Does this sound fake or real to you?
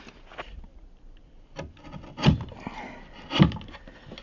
real